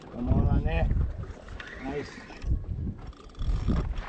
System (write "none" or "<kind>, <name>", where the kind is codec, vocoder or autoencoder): none